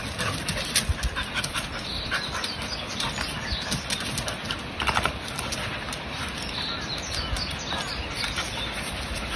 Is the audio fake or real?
real